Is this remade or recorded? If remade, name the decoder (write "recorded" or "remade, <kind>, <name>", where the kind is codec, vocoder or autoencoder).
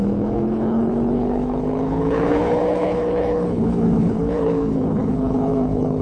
remade, codec, HILCodec